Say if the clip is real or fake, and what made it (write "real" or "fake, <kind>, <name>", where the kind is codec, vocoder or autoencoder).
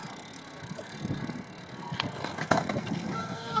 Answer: fake, codec, SNAC